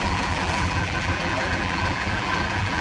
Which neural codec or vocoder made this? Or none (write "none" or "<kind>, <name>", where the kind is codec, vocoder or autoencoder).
vocoder, BigVGAN v2